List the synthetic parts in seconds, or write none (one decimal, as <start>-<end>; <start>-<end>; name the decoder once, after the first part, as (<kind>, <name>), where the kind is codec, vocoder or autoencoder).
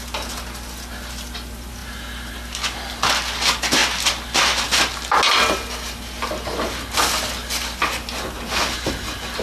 none